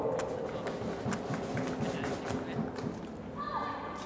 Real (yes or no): yes